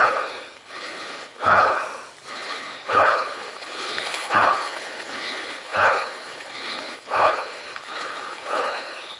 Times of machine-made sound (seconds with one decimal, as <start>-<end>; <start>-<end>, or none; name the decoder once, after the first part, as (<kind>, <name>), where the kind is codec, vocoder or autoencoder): 0.0-1.8 (codec, HILCodec); 2.3-9.2